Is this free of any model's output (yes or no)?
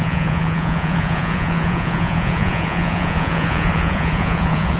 no